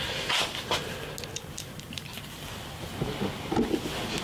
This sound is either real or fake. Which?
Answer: real